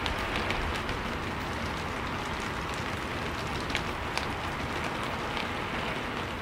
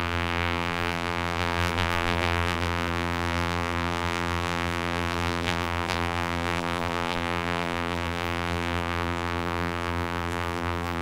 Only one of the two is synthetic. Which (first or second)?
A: second